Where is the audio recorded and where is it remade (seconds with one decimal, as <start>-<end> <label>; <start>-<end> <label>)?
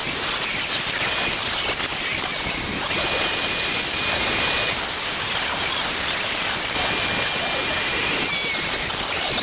0.0-9.4 recorded